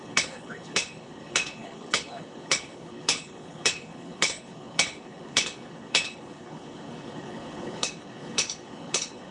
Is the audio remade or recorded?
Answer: remade